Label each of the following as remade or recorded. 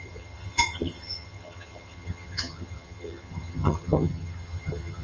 remade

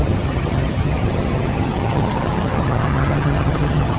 remade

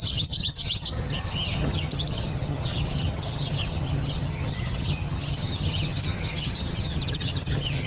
remade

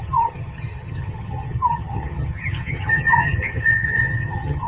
remade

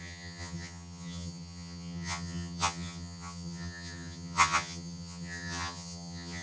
remade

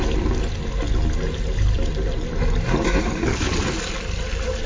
recorded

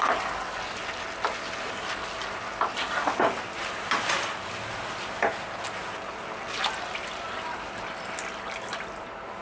recorded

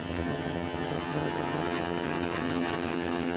remade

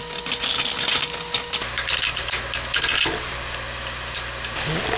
recorded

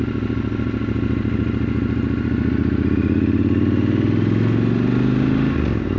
recorded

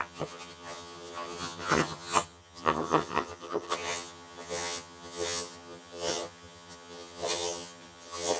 remade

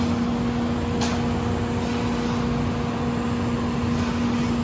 recorded